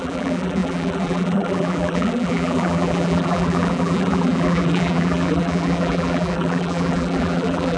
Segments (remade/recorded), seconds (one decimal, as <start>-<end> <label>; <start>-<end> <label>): 0.0-7.8 remade